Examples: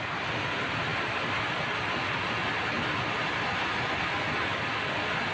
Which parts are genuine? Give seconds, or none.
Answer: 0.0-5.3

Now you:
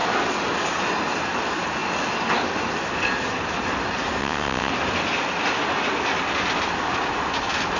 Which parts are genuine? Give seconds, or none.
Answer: 0.0-4.2; 4.7-7.8

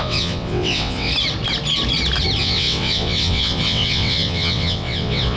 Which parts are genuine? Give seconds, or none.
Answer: 1.1-2.4

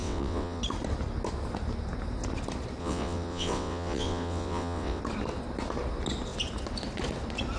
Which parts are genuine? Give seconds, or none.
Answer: 0.6-2.8; 5.0-7.6

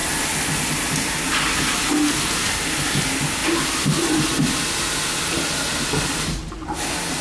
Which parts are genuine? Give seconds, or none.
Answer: 0.0-7.2

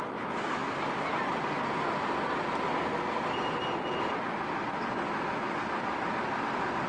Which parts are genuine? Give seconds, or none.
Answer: 0.0-6.9